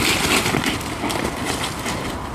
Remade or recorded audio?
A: recorded